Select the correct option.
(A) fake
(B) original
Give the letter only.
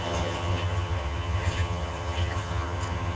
A